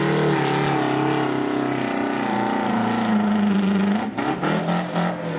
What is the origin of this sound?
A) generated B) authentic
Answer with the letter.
B